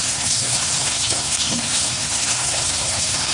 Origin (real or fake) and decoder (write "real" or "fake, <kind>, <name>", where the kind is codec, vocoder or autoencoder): fake, codec, SNAC